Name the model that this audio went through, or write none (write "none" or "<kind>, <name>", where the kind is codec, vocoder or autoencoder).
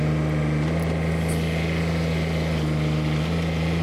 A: none